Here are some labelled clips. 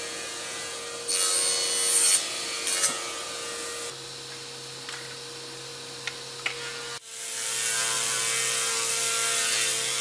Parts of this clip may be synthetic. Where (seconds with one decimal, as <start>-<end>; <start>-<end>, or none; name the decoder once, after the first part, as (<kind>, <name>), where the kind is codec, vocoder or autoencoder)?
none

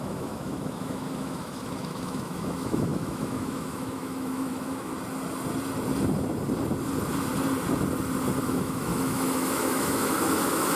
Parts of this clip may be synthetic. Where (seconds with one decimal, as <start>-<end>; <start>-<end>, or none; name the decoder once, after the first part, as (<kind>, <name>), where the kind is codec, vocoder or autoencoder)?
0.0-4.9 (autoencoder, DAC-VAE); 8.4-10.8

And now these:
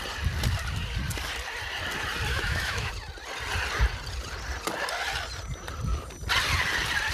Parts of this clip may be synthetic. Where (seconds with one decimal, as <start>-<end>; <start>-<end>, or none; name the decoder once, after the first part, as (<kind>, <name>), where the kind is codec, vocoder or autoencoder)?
2.3-2.9 (autoencoder, DAC-VAE)